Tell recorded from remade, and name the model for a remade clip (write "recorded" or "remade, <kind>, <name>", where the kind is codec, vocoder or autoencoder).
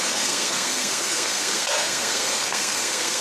remade, codec, SNAC